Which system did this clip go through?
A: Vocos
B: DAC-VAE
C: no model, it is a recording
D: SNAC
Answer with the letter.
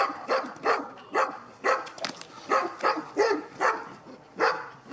C